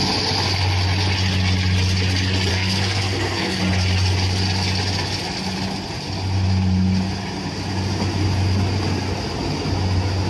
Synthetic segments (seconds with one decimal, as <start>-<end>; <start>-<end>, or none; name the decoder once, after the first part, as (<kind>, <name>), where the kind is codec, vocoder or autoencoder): 2.5-3.6 (codec, SNAC)